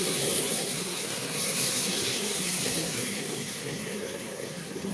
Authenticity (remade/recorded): remade